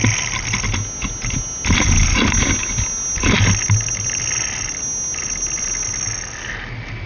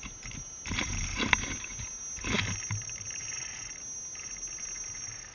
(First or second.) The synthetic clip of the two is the second